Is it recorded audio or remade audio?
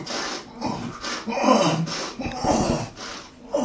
recorded